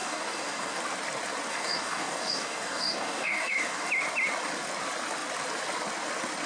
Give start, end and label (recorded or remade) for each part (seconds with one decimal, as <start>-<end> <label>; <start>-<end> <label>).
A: 0.0-0.8 remade; 0.8-1.5 recorded; 1.5-3.9 remade; 3.9-6.5 recorded